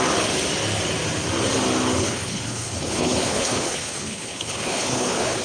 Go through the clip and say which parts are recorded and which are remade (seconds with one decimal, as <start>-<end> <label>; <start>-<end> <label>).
0.0-2.0 recorded; 2.0-5.4 remade